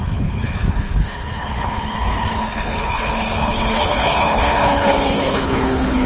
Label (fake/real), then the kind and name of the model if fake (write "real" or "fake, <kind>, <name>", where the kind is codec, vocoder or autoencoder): fake, codec, HILCodec